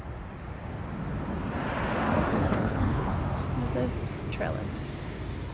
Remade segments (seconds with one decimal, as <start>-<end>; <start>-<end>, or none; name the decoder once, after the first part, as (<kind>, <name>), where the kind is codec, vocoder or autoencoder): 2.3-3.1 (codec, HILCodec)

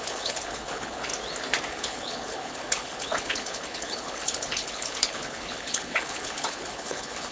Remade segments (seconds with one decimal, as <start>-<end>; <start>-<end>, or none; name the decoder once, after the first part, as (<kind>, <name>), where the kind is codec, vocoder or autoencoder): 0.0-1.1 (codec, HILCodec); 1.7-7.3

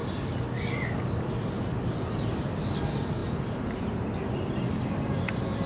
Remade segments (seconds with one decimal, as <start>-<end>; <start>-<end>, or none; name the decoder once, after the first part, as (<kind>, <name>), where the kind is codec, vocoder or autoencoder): none

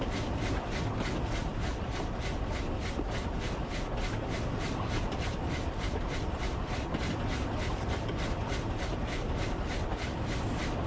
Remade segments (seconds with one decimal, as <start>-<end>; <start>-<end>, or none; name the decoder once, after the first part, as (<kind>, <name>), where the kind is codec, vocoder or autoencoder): none

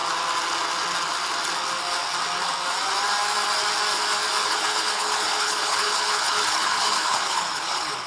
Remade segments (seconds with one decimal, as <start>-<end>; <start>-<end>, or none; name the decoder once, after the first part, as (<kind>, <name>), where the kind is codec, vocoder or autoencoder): 4.4-8.1 (codec, HILCodec)

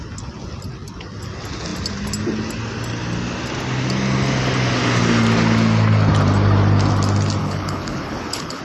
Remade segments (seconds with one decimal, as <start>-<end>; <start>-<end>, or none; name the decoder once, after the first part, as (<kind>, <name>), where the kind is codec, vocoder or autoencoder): 7.4-8.6 (codec, HILCodec)

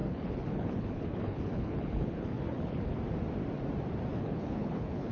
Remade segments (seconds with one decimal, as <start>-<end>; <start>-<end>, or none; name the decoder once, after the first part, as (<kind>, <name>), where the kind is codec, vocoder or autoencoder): 0.0-3.0 (codec, HILCodec); 4.1-5.1